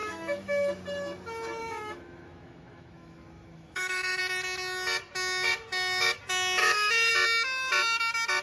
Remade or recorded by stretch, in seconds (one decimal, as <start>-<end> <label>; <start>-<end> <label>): 0.0-0.7 remade; 0.7-1.6 recorded; 1.6-4.2 remade; 4.2-6.6 recorded; 6.6-7.1 remade; 7.1-8.4 recorded